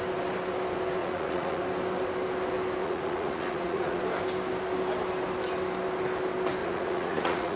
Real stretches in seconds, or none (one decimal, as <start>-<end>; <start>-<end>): 0.0-1.0; 1.6-2.8; 4.0-6.6